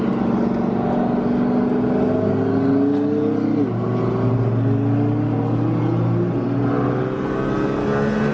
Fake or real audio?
real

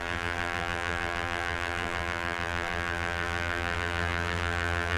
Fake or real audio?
fake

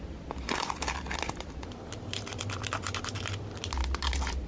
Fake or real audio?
real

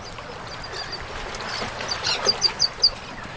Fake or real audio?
fake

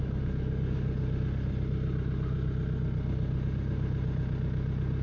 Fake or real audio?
real